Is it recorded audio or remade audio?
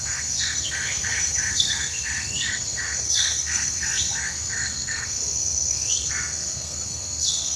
remade